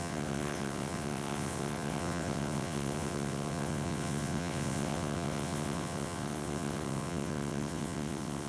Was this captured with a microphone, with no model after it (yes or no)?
no